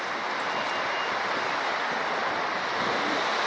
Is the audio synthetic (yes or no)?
no